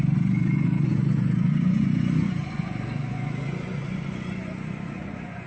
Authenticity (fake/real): fake